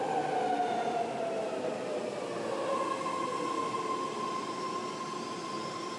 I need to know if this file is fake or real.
real